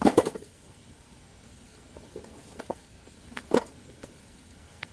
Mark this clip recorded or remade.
remade